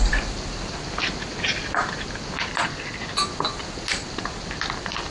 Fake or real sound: real